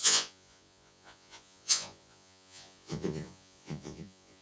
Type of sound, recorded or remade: remade